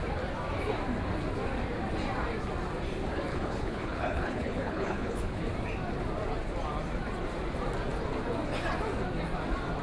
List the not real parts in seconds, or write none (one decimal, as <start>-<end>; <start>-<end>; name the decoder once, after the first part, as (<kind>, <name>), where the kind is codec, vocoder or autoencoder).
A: 3.3-5.4 (codec, HILCodec)